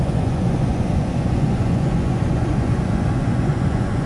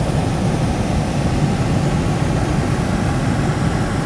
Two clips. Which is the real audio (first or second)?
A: second